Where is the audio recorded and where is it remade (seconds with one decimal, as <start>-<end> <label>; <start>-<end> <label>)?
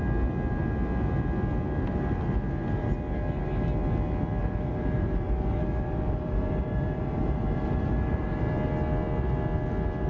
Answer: 0.0-4.4 recorded; 4.4-8.5 remade; 8.5-10.1 recorded